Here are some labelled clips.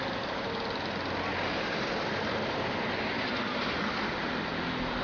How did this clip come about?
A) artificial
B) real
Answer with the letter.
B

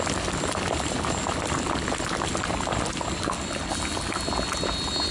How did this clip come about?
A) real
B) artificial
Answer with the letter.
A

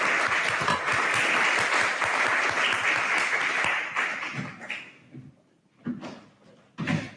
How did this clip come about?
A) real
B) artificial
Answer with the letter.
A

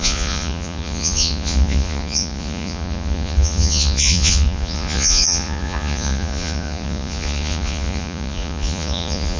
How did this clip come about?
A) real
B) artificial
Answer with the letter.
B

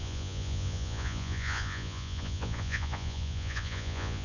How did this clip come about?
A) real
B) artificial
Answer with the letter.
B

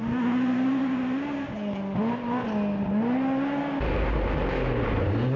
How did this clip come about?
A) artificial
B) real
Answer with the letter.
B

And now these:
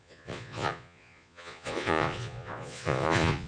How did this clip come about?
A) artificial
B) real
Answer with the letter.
A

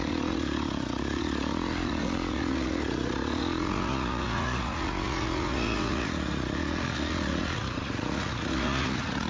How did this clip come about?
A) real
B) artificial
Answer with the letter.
B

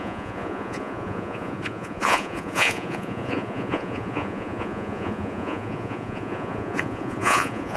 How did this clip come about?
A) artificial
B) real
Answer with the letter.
A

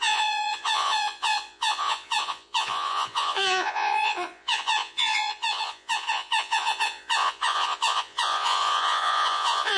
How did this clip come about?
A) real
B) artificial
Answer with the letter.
B